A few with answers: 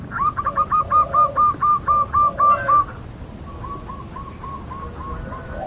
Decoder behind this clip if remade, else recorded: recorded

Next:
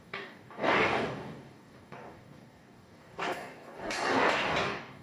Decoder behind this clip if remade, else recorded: remade, codec, DAC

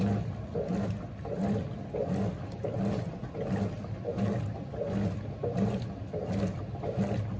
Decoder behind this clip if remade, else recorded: recorded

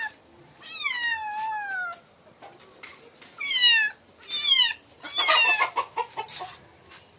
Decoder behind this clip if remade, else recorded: recorded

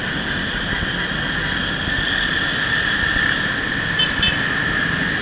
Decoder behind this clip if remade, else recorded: recorded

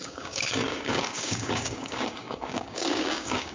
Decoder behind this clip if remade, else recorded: remade, codec, DAC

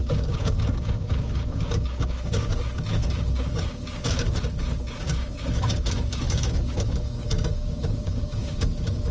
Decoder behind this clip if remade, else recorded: remade, codec, DAC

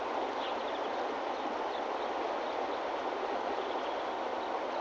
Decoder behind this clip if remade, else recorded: recorded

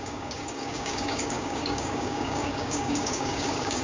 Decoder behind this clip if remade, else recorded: remade, codec, DAC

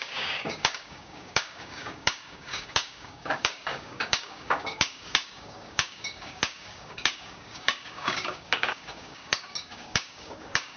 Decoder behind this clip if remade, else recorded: remade, codec, DAC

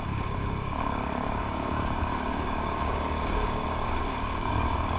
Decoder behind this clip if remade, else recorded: remade, codec, DAC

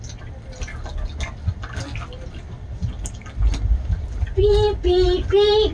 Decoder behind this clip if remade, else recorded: recorded